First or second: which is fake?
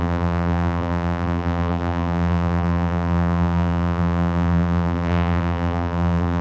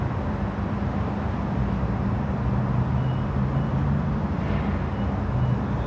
first